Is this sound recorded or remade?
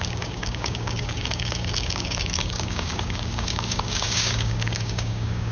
remade